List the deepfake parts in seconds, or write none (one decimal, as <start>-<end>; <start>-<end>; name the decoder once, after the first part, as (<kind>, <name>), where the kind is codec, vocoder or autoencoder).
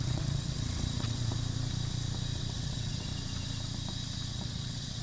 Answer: 0.0-1.3 (vocoder, WaveNeXt); 2.5-3.1; 4.3-5.0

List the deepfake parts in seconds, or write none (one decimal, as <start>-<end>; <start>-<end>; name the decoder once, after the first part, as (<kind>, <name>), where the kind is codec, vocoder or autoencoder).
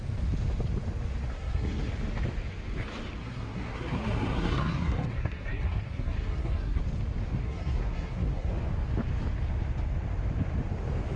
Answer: 1.3-1.9 (codec, SNAC); 3.2-6.8; 7.4-8.5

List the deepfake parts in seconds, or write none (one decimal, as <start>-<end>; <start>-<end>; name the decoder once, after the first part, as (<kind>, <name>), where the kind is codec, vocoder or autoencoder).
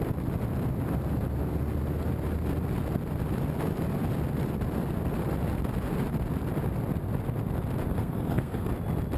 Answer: 7.9-8.7 (codec, SNAC)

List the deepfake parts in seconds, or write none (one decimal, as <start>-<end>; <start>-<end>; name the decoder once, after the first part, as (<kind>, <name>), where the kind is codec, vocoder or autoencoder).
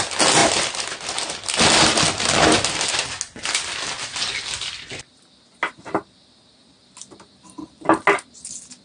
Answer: none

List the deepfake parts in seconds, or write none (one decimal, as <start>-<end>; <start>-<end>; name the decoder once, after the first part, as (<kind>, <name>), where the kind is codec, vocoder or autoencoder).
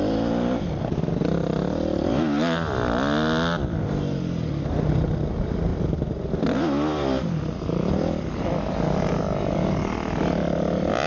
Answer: 5.7-9.1 (vocoder, BigVGAN v2)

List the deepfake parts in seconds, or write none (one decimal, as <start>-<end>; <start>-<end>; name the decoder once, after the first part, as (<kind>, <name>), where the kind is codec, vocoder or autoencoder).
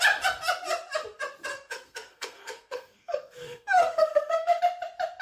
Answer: 1.5-4.6 (codec, SNAC)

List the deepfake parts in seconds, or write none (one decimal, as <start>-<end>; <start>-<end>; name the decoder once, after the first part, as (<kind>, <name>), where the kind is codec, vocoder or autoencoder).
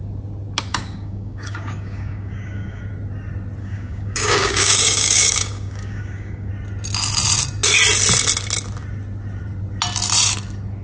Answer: 0.7-2.8 (codec, DAC); 3.6-6.5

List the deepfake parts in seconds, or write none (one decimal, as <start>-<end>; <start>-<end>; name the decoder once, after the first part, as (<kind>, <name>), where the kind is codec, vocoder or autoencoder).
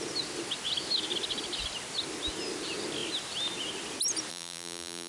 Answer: 4.3-5.1 (vocoder, BigVGAN v2)